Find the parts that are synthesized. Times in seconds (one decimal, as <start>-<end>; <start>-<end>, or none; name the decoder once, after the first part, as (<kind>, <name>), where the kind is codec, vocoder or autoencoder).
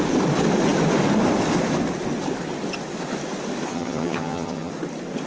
3.7-4.7 (vocoder, HiFi-GAN)